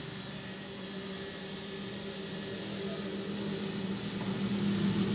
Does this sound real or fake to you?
real